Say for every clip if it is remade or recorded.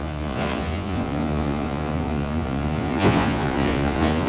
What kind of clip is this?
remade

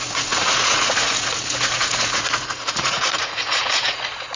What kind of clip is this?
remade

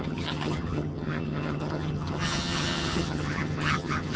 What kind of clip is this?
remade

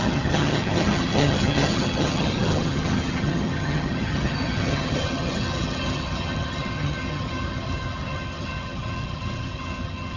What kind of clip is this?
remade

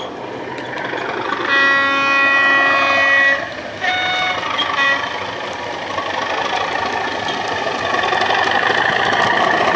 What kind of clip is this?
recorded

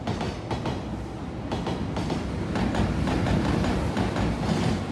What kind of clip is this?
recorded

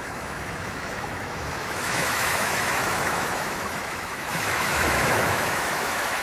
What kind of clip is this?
remade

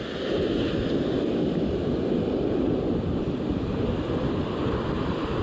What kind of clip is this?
recorded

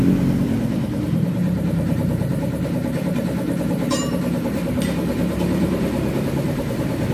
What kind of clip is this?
remade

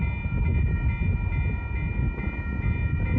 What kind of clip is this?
recorded